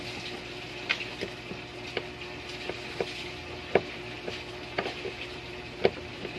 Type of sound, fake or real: real